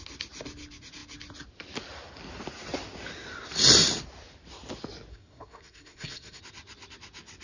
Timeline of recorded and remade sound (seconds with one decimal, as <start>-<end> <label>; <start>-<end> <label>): 0.0-5.1 recorded; 5.1-6.4 remade; 6.4-7.4 recorded